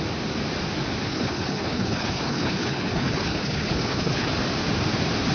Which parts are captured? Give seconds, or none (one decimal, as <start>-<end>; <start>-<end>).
0.0-1.1; 4.3-5.3